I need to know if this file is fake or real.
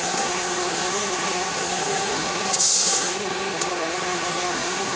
fake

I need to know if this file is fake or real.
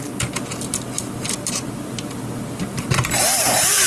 real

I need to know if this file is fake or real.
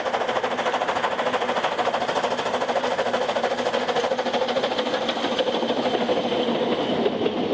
real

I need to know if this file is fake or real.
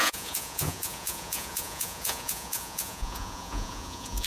fake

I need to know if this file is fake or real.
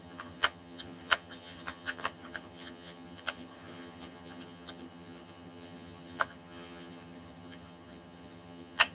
fake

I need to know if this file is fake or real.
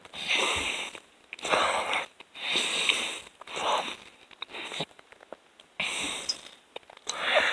real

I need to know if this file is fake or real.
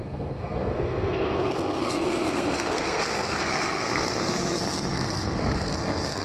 fake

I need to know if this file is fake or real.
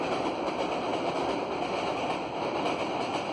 real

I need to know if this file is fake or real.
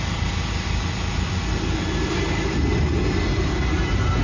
real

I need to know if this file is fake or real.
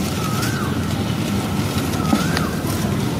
real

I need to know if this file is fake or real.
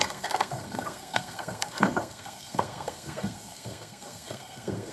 fake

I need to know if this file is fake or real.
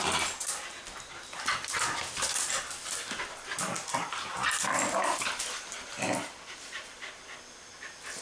real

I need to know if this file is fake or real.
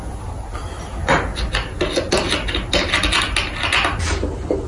real